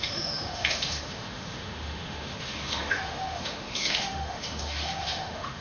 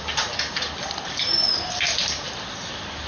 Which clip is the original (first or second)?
second